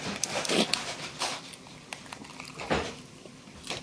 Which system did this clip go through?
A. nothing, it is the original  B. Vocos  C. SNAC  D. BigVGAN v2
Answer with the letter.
D